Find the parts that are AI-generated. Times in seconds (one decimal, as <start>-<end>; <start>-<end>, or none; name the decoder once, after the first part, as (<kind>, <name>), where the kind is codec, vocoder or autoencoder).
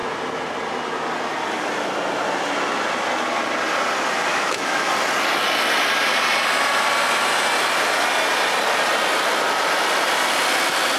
4.3-4.9 (autoencoder, DAC-VAE)